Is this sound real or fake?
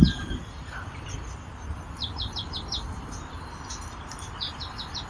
real